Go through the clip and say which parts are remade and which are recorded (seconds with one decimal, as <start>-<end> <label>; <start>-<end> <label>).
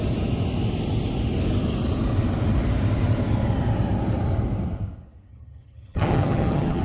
0.0-5.3 recorded; 5.3-6.8 remade